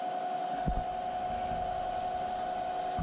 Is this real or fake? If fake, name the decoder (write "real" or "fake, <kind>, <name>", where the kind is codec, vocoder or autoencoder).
real